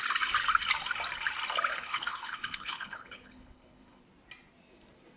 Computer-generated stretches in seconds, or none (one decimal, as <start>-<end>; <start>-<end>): 1.7-4.0